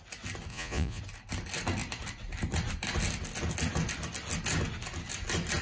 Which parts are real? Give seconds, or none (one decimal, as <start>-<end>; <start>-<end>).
0.0-0.5; 1.0-5.6